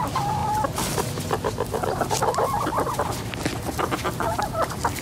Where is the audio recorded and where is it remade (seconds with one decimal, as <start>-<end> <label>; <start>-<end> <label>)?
0.0-5.0 recorded